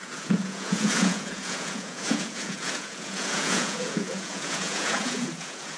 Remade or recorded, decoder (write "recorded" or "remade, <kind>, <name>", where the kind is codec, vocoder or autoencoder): remade, vocoder, Vocos